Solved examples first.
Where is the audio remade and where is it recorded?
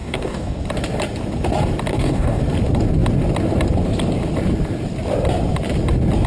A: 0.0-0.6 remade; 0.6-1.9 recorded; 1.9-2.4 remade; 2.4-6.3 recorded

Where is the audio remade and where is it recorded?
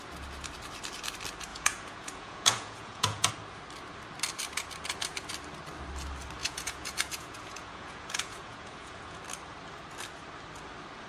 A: 0.0-1.5 recorded; 1.5-3.3 remade; 3.3-6.4 recorded; 6.4-9.2 remade; 9.2-11.1 recorded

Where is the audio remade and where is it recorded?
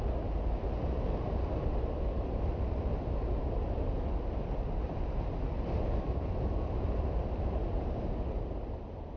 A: 0.0-9.2 recorded